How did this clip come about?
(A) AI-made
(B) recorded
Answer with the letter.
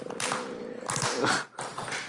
B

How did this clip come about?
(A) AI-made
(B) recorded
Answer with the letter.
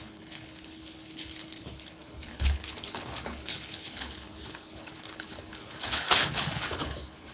A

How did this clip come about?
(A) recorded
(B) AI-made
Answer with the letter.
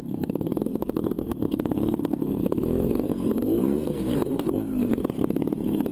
B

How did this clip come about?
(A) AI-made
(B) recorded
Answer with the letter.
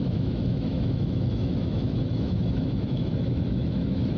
A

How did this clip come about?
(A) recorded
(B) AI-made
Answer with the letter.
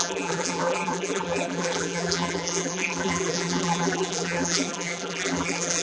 B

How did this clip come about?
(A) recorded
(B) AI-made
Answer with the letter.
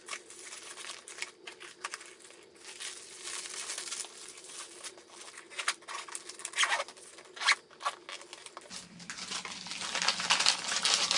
A